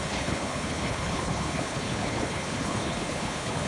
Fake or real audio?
fake